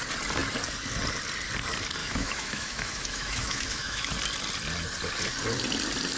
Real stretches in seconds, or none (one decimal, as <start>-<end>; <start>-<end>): 0.0-2.0; 4.1-6.2